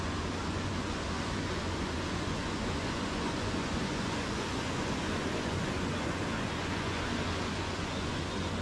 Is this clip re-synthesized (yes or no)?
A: yes